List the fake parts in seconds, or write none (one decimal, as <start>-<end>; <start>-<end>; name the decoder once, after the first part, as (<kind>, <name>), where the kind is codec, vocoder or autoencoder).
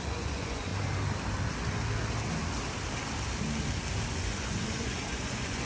0.0-0.7 (vocoder, Vocos); 4.1-5.7